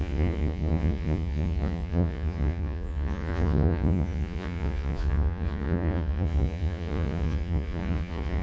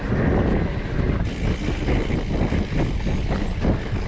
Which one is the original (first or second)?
second